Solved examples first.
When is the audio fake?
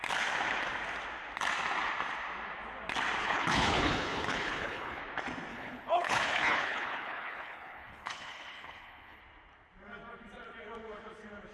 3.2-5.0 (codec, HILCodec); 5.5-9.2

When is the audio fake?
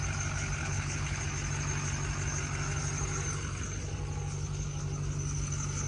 0.6-1.2 (codec, HILCodec)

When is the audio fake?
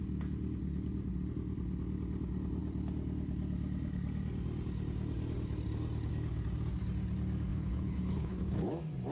7.5-8.7 (codec, HILCodec)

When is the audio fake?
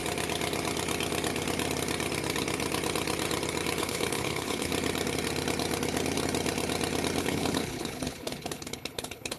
3.8-4.7 (codec, HILCodec); 7.2-9.4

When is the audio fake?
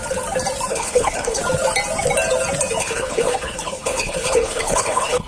0.7-1.4 (codec, HILCodec); 2.8-5.3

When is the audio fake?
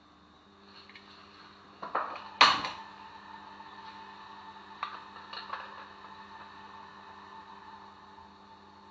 none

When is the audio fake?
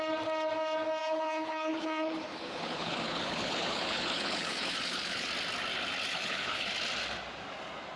1.0-5.3 (codec, HILCodec); 6.1-6.7